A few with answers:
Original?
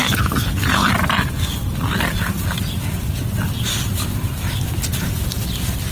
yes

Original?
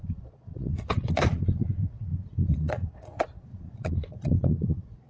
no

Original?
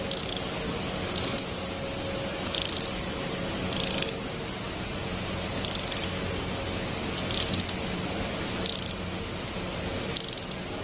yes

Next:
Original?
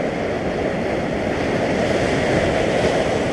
yes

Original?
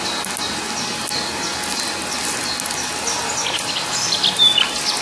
yes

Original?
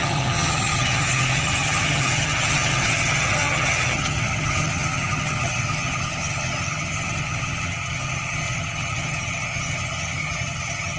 no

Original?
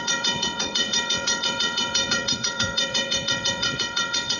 no